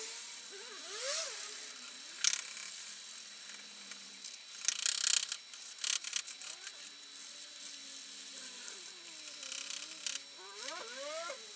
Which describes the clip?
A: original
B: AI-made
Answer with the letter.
A